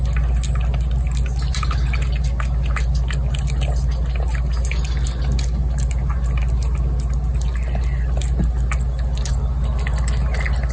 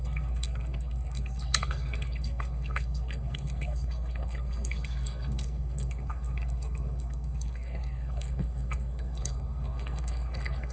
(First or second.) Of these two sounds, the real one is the first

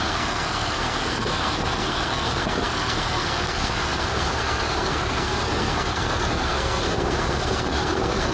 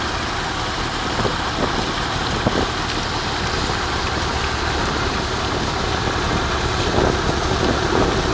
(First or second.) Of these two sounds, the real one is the second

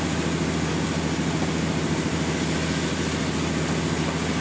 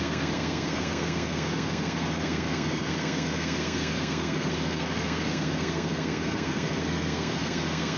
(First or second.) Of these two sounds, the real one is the first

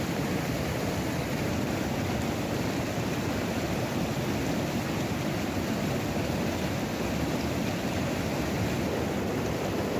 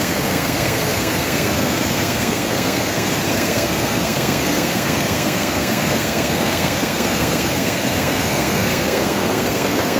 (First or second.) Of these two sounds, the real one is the first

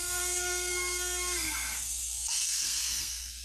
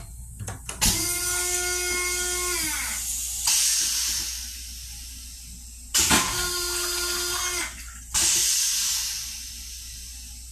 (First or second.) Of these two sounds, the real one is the second